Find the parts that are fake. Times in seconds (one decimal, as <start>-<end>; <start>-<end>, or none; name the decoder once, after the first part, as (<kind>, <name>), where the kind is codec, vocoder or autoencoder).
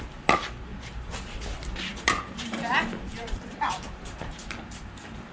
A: 0.7-1.4 (vocoder, BigVGAN v2); 1.9-2.7; 3.1-4.0